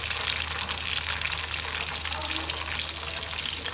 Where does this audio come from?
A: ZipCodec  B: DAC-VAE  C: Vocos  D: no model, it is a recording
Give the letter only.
D